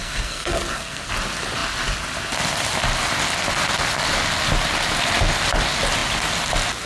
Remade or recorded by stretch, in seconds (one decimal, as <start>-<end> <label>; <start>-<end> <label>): 0.0-1.1 remade; 1.1-6.9 recorded